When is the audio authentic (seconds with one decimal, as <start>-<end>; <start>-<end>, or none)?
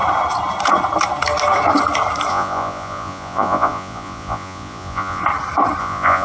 0.0-2.3; 5.2-5.8